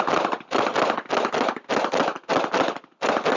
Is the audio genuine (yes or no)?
yes